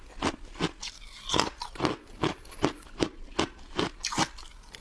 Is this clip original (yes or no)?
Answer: yes